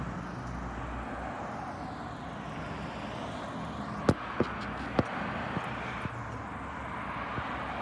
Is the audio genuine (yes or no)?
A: yes